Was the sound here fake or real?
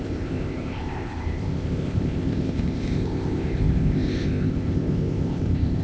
fake